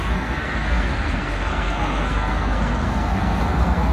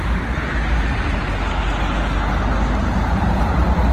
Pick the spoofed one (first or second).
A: first